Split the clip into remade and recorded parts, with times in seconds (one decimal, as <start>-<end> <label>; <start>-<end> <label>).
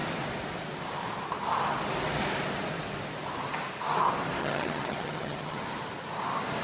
0.0-4.4 recorded; 4.4-5.6 remade; 5.6-6.6 recorded